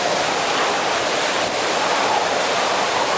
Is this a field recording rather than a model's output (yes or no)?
yes